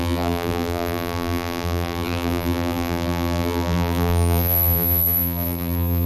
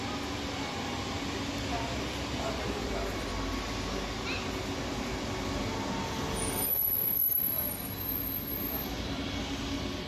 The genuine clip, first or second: second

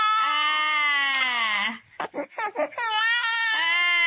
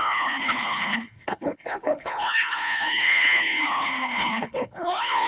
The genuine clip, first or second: first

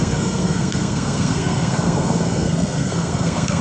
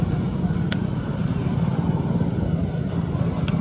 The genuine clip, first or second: second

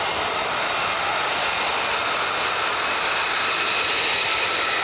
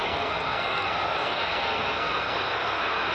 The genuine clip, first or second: first